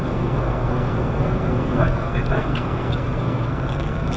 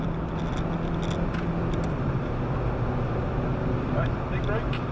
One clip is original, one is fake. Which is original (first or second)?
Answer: second